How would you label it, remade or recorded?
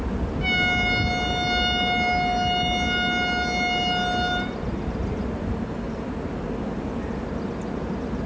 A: recorded